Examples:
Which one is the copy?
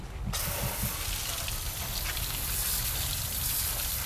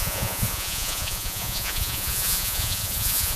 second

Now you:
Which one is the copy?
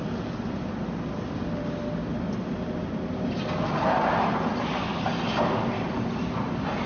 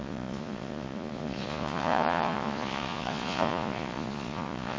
second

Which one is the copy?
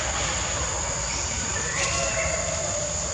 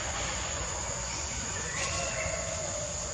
second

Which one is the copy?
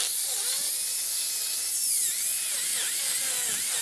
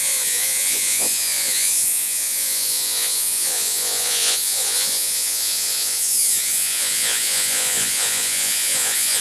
second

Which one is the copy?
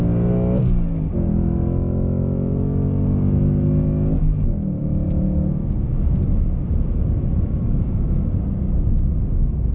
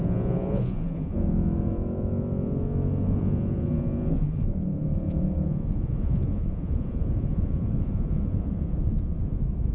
second